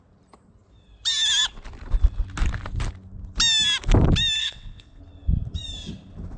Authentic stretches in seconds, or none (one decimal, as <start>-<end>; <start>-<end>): 0.0-4.4; 5.0-6.4

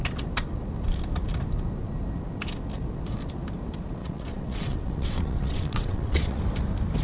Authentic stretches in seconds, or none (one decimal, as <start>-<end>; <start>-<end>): 0.0-4.0; 6.4-7.0

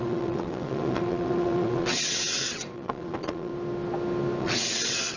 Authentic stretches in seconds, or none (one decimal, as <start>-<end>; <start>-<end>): 3.5-4.4

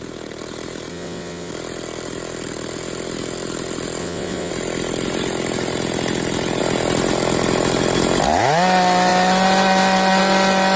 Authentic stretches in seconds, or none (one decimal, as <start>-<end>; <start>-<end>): 0.0-0.9; 1.5-4.0; 4.5-10.8